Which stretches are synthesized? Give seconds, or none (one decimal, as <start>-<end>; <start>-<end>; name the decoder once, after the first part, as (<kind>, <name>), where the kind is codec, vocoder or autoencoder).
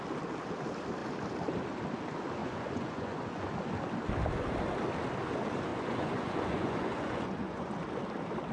2.4-3.5 (vocoder, Vocos); 5.7-7.7